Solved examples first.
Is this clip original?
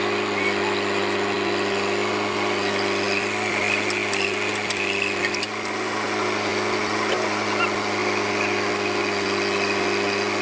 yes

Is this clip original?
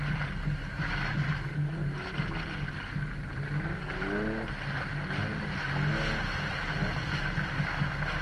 yes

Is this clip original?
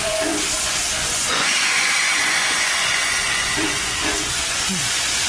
no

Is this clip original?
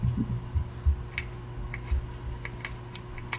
yes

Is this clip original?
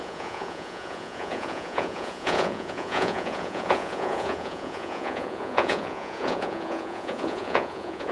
no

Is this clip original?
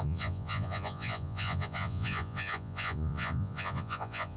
no